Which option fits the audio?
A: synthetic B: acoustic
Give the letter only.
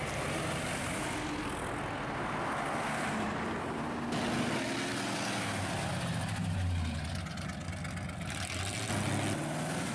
B